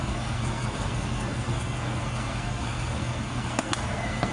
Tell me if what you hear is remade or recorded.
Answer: remade